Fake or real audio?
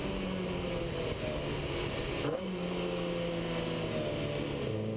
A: real